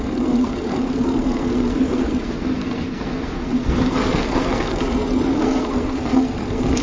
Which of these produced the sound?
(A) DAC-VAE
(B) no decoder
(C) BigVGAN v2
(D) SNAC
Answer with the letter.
D